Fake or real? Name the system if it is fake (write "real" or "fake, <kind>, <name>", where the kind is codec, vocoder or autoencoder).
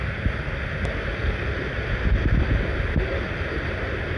real